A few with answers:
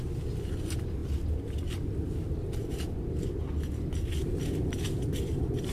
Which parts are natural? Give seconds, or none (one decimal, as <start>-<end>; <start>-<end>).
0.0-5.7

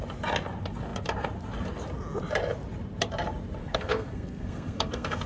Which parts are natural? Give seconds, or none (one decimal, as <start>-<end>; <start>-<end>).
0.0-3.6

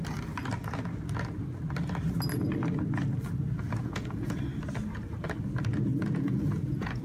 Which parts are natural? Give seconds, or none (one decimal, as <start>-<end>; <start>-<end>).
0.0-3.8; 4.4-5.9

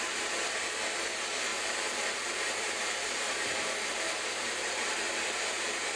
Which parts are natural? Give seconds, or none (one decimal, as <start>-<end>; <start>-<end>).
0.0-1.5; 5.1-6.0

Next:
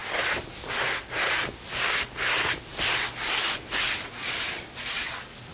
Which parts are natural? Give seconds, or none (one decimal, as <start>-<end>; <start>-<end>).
0.0-5.5

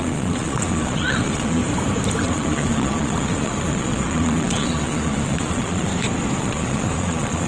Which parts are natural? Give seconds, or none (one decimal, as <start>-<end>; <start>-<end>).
1.6-2.2; 5.9-6.4